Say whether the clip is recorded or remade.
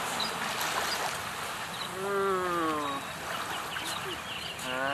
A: recorded